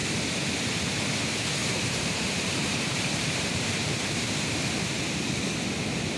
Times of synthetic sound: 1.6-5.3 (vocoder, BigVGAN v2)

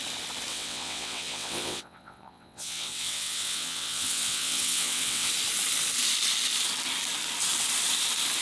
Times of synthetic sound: 0.5-5.3 (vocoder, WaveNeXt)